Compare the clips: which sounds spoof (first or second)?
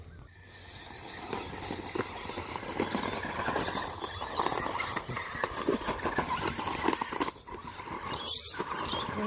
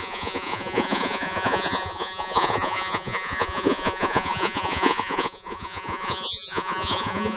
second